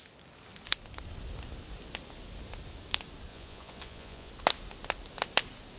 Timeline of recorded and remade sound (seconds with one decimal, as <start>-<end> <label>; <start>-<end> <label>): 0.0-3.3 recorded; 3.3-4.3 remade; 4.3-5.8 recorded